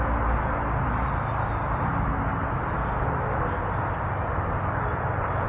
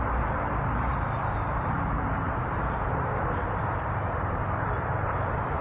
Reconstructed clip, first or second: second